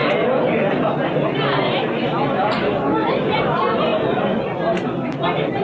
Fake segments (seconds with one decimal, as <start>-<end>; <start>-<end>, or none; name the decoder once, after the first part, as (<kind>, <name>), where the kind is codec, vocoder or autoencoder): none